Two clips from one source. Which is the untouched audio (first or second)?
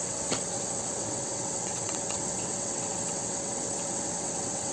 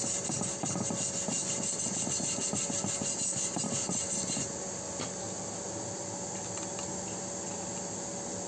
second